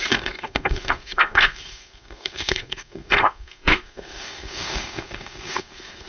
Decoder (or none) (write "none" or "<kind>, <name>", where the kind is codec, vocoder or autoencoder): codec, SNAC